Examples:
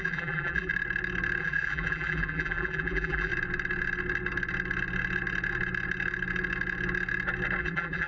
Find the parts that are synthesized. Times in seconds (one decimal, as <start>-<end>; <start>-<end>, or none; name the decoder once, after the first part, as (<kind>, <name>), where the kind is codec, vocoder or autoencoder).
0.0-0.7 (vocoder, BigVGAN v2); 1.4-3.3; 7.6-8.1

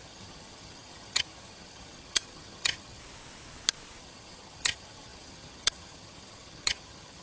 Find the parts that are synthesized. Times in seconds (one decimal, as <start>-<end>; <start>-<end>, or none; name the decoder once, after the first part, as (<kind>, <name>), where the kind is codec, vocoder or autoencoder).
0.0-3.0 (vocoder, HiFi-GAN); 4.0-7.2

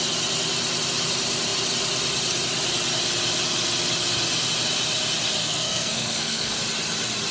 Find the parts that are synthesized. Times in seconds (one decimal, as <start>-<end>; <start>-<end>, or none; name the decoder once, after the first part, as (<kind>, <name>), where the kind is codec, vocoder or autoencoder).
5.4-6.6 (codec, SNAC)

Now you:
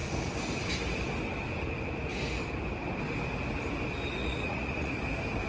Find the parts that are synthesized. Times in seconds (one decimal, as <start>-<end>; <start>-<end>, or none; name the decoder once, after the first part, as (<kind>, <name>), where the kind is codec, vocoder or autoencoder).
4.2-5.0 (vocoder, Vocos)